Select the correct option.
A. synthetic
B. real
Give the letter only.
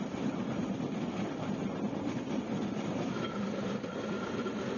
B